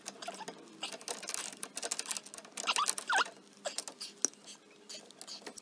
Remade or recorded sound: recorded